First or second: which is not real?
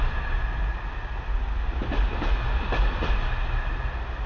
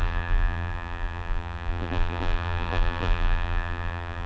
second